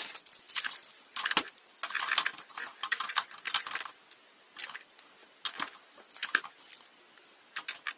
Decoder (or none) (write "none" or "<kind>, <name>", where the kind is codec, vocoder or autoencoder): none